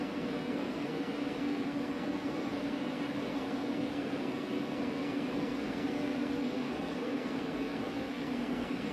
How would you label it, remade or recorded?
remade